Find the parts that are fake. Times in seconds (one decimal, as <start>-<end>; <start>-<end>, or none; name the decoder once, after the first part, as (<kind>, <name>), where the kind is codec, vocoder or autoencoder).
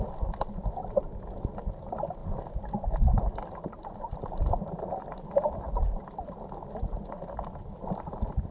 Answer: none